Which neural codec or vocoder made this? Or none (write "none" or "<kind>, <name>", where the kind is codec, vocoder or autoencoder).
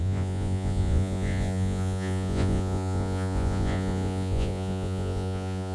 vocoder, Vocos